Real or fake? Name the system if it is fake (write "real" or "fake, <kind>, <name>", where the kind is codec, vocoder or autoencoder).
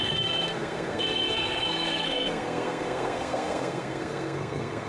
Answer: fake, codec, SNAC